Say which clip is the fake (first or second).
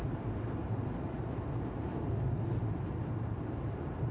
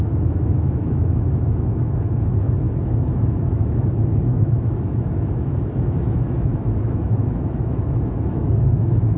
second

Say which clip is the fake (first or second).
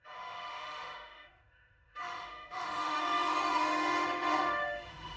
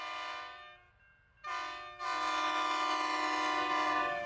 first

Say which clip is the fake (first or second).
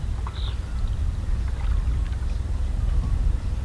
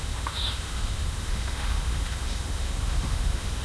second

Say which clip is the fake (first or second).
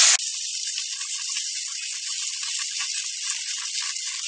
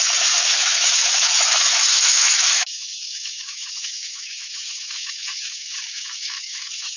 second